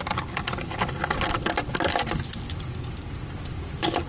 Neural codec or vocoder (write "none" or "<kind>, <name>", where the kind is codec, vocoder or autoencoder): none